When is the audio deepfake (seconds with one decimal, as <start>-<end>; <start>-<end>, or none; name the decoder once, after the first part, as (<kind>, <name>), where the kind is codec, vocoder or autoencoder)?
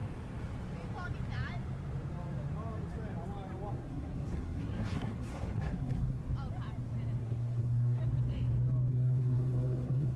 3.7-6.2 (codec, SNAC); 7.2-8.0; 8.9-10.2